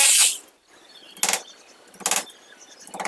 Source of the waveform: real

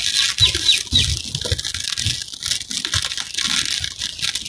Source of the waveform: real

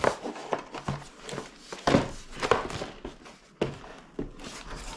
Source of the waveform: real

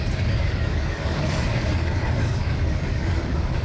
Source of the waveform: fake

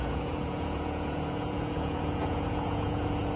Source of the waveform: fake